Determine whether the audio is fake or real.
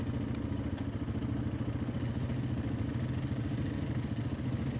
real